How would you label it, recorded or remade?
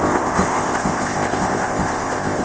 remade